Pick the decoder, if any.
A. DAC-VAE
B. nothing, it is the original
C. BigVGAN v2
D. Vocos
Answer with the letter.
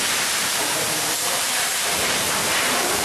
C